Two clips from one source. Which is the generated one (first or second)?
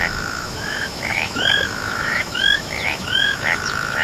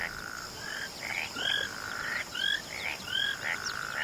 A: first